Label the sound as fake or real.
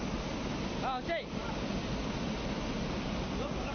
real